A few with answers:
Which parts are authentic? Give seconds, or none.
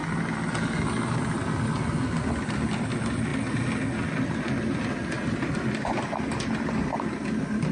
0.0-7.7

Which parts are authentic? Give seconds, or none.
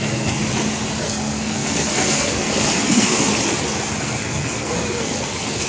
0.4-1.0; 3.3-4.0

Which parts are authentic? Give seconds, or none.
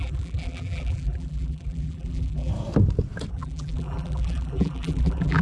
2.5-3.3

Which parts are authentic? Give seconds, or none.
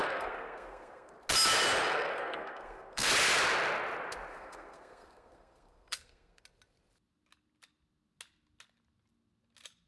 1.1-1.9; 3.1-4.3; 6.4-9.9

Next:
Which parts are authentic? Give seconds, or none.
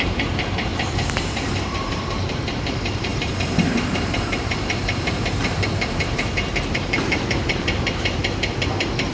8.2-9.1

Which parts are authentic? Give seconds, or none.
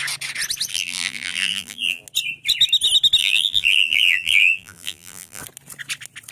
0.0-0.7; 2.0-3.2; 5.4-6.3